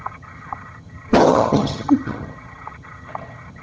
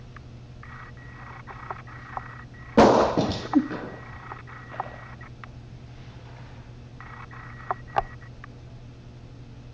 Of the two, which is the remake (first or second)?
first